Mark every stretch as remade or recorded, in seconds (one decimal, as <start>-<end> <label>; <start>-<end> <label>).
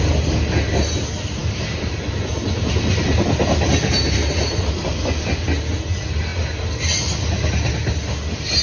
0.0-8.6 recorded